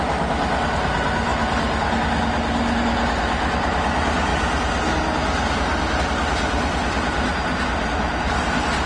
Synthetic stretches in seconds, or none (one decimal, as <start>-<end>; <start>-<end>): none